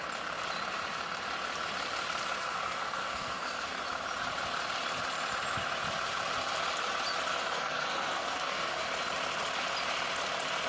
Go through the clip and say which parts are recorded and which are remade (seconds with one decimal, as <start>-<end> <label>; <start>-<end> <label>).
0.0-2.4 recorded; 2.4-3.8 remade; 3.8-7.3 recorded; 7.3-8.8 remade; 8.8-10.7 recorded